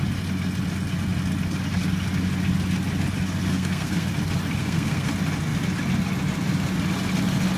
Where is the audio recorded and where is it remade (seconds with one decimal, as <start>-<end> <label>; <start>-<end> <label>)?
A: 0.0-3.5 recorded; 3.5-4.1 remade; 4.1-4.6 recorded; 4.6-5.1 remade; 5.1-7.6 recorded